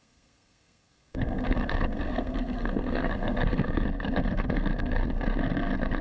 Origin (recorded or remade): remade